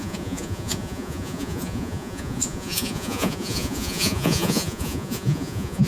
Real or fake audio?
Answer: fake